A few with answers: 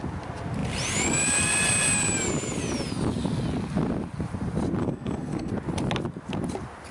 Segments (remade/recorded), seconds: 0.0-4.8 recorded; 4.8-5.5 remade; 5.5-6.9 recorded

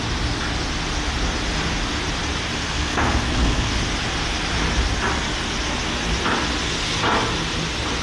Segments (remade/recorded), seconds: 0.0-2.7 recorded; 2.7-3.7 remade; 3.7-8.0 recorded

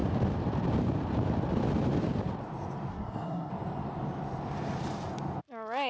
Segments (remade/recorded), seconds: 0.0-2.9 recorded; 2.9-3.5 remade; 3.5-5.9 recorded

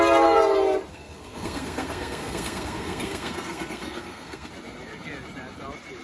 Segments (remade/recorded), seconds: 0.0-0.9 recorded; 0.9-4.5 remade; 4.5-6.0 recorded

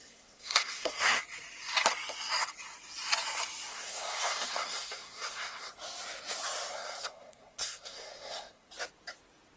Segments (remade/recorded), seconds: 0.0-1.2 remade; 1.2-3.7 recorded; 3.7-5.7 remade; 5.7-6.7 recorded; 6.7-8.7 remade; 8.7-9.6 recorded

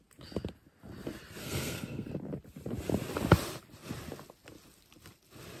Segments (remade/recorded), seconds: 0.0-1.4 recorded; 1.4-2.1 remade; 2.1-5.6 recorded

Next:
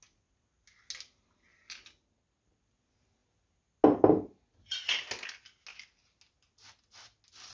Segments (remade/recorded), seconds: 0.0-7.5 recorded

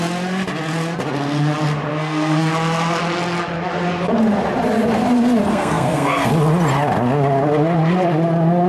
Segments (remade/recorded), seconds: 0.0-1.9 recorded; 1.9-2.5 remade; 2.5-5.5 recorded; 5.5-6.3 remade; 6.3-8.7 recorded